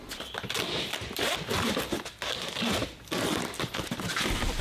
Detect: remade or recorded recorded